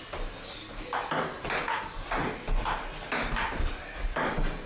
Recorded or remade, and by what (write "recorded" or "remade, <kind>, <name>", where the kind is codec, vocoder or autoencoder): recorded